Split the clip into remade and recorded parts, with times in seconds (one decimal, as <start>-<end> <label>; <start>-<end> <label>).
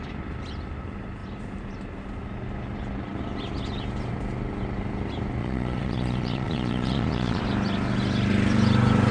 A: 0.0-5.4 recorded; 5.4-7.4 remade; 7.4-9.1 recorded